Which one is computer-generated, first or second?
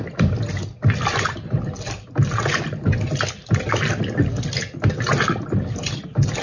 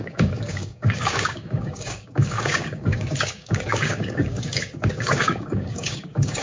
second